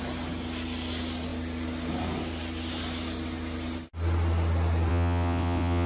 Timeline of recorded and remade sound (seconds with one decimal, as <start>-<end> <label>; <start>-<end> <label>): 0.0-4.9 recorded; 4.9-5.9 remade